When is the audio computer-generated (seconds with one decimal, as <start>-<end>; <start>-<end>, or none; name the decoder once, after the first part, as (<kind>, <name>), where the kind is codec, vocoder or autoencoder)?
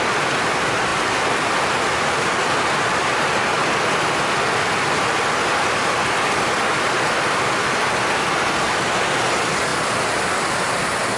none